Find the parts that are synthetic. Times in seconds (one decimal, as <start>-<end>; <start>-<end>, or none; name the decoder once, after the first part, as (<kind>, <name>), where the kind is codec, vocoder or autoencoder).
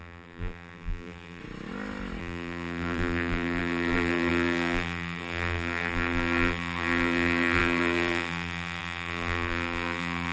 0.0-1.4 (vocoder, BigVGAN v2); 2.2-10.3